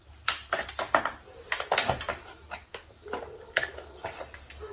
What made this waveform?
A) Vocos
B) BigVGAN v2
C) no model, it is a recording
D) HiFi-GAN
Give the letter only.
C